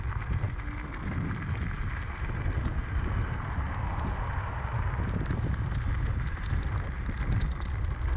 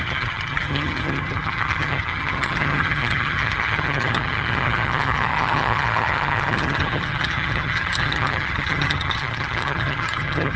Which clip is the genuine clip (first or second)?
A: first